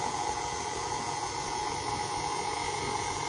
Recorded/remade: remade